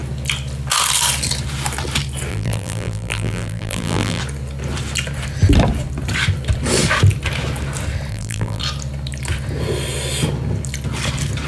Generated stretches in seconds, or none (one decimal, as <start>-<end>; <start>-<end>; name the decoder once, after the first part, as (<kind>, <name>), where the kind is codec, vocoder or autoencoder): 2.3-4.2 (vocoder, BigVGAN v2); 8.1-8.6